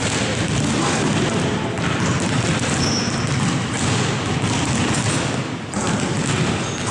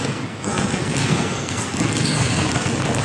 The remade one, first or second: second